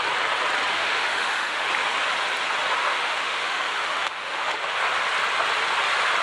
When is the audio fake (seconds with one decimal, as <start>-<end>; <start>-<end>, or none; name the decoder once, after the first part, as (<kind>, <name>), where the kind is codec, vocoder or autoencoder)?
0.7-1.7 (autoencoder, DAC-VAE); 2.8-4.6